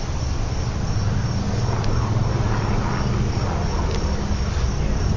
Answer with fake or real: real